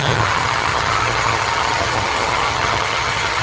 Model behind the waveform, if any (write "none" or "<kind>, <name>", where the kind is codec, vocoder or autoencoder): vocoder, HiFi-GAN